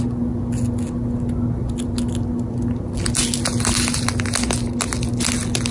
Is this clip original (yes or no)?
yes